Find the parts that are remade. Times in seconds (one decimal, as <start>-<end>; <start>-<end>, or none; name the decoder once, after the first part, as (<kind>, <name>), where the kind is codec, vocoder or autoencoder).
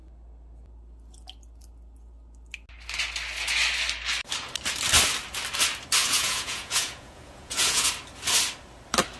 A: 6.0-7.9 (vocoder, Vocos)